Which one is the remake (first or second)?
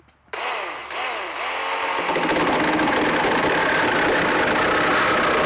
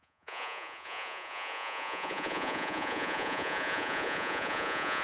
second